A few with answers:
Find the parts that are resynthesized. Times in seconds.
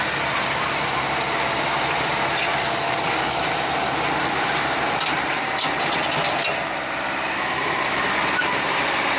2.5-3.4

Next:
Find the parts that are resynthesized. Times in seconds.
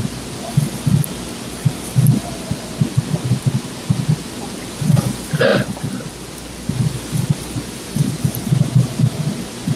none